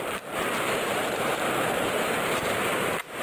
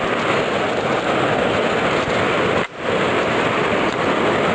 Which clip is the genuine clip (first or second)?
second